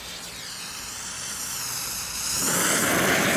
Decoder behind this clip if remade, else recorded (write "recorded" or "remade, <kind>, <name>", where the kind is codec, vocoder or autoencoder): recorded